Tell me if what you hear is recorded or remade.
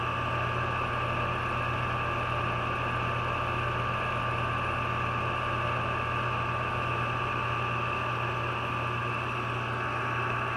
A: recorded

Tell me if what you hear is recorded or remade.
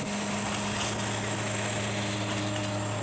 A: recorded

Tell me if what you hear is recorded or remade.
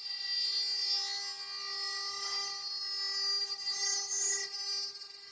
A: recorded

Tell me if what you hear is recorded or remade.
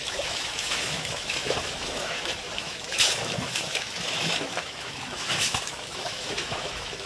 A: remade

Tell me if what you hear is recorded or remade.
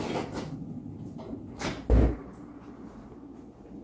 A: recorded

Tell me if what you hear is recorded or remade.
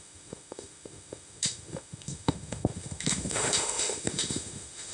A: remade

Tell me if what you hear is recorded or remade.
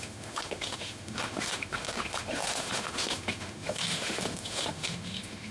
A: remade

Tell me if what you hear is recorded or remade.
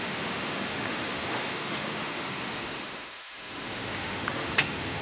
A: remade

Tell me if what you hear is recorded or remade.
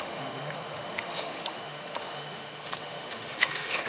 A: remade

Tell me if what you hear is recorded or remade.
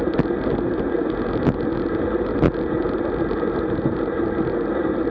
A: recorded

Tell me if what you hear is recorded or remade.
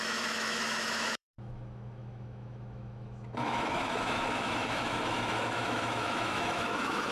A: remade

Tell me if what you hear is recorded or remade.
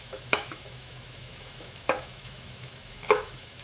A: remade